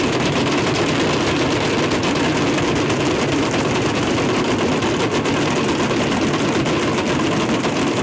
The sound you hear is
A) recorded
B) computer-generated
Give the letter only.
A